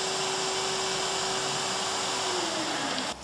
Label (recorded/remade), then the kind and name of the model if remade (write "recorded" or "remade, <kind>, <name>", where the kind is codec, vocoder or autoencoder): recorded